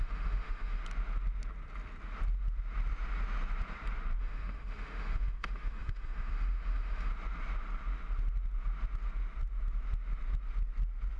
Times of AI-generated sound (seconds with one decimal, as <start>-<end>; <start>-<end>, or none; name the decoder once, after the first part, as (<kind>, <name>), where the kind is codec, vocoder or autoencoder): 0.0-0.8 (autoencoder, DAC-VAE); 4.2-7.1